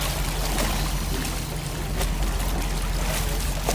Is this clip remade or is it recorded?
recorded